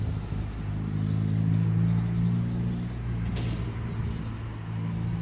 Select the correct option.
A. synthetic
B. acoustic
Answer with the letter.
B